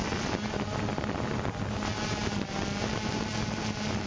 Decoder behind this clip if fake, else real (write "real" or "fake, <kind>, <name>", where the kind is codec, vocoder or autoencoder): real